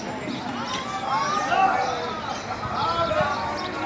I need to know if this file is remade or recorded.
recorded